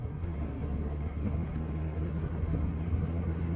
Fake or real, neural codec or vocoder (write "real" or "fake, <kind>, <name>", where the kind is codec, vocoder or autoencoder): fake, codec, SNAC